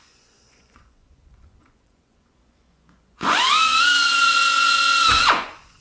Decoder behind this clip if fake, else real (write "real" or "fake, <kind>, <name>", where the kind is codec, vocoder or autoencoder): fake, vocoder, Vocos